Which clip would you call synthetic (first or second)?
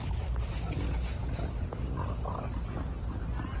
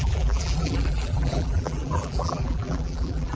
second